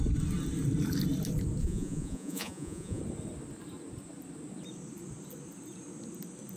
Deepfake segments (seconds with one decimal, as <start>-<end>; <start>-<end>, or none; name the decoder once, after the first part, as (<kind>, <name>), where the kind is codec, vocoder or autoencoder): 1.6-3.0 (vocoder, Vocos)